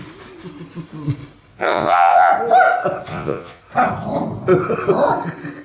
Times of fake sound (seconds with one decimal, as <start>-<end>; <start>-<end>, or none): 1.5-2.3; 3.1-3.6